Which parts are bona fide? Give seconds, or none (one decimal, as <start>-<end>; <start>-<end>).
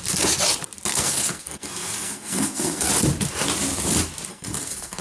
0.0-0.9; 2.9-4.3